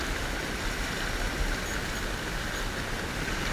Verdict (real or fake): real